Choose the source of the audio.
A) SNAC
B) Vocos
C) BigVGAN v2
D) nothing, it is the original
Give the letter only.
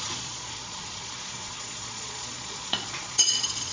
B